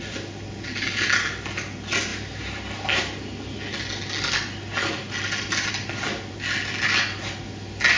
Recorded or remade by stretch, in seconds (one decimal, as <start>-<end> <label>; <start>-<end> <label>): 0.0-8.0 recorded